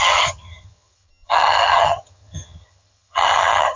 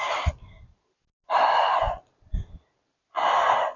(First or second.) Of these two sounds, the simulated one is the first